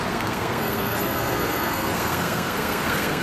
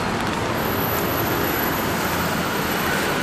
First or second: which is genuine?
second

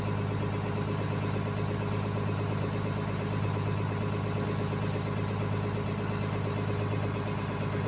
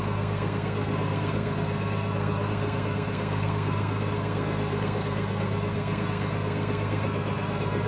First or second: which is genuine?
first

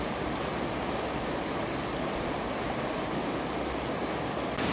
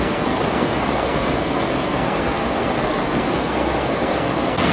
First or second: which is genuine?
first